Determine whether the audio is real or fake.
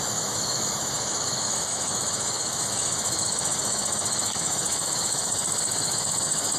fake